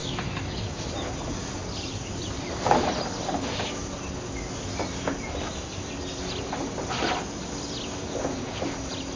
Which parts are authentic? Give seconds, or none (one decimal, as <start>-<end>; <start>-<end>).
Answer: 1.1-9.2